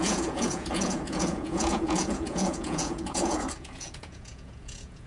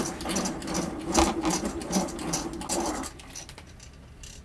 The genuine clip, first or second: second